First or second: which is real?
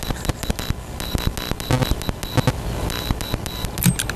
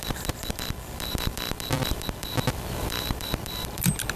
first